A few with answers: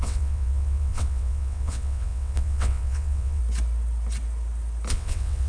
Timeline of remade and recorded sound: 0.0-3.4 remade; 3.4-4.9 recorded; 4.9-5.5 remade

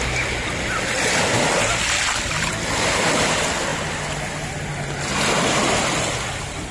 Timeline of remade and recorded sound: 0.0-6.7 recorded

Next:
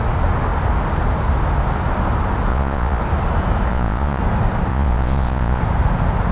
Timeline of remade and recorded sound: 0.0-2.5 recorded; 2.5-3.0 remade; 3.0-3.7 recorded; 3.7-4.2 remade; 4.2-4.7 recorded; 4.7-5.6 remade; 5.6-6.3 recorded

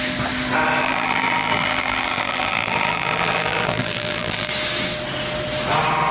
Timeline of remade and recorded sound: 0.0-0.8 recorded; 0.8-4.5 remade; 4.5-6.1 recorded

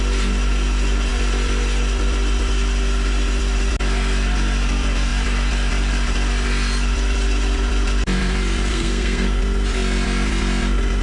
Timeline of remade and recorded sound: 0.0-8.7 recorded; 8.7-9.4 remade; 9.4-11.0 recorded

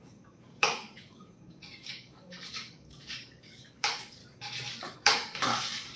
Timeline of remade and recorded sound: 0.0-4.2 remade; 4.2-4.8 recorded; 4.8-6.0 remade

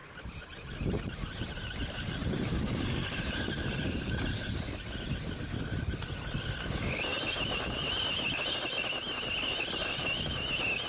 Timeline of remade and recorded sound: 0.0-5.1 remade; 5.1-10.9 recorded

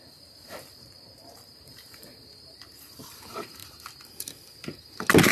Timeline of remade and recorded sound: 0.0-3.6 remade; 3.6-5.3 recorded